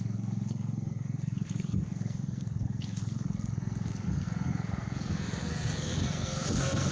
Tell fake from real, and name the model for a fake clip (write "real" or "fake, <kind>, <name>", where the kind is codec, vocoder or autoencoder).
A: fake, codec, SNAC